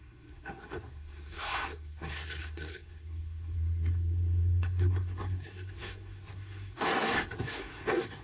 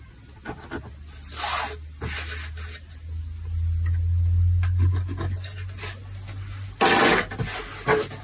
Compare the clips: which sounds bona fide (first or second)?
second